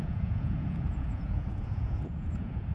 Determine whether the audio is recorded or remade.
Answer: remade